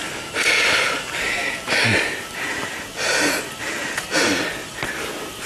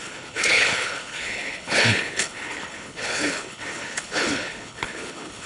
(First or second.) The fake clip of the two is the second